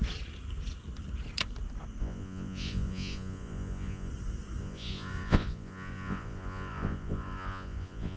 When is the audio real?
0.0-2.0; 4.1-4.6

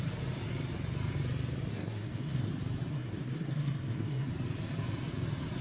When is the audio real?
0.0-1.7; 2.5-2.9; 4.3-5.6

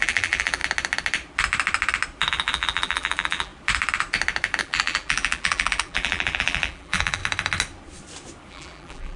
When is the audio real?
0.6-2.3; 3.5-4.6; 7.2-8.5